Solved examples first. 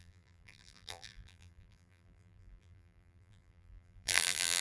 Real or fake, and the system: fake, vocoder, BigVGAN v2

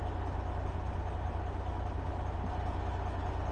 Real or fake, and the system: real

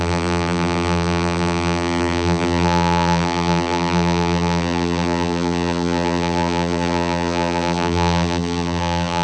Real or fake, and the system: fake, vocoder, BigVGAN v2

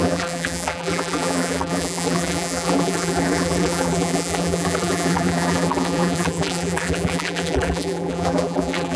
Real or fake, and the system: fake, vocoder, BigVGAN v2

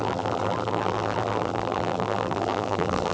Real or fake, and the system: fake, vocoder, BigVGAN v2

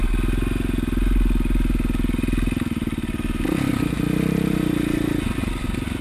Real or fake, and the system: real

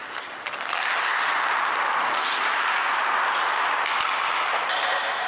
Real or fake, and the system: real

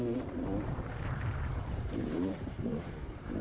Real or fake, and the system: fake, vocoder, BigVGAN v2